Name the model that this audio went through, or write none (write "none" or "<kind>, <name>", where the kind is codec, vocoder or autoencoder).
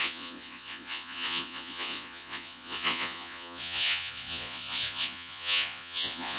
vocoder, Vocos